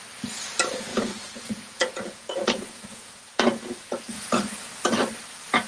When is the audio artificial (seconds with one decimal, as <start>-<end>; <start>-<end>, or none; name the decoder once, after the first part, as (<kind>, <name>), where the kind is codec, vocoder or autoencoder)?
0.9-4.3 (vocoder, Vocos)